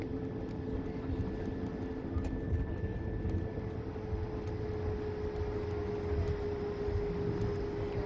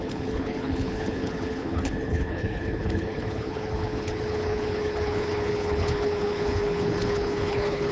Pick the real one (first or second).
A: first